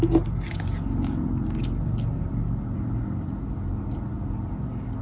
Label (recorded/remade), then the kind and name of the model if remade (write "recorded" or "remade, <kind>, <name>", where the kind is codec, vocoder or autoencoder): recorded